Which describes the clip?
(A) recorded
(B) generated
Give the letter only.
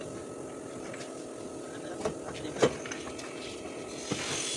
A